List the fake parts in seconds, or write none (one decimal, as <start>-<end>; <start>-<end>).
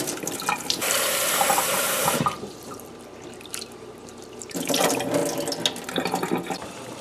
0.0-5.2; 6.6-7.0